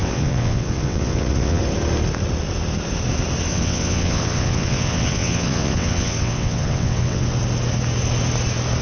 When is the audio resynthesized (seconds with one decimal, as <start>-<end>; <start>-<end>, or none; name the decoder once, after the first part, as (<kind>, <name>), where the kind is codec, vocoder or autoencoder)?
0.0-1.6 (vocoder, WaveNeXt); 3.5-7.2